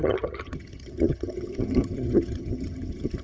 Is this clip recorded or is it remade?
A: remade